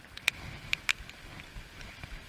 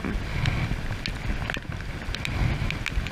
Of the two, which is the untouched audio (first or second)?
second